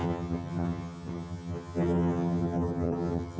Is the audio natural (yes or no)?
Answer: no